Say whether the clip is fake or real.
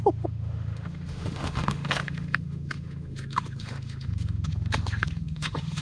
fake